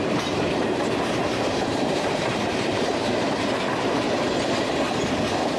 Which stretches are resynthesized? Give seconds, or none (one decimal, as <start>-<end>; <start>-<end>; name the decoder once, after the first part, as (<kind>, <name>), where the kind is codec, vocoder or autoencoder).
0.0-3.1 (vocoder, BigVGAN v2)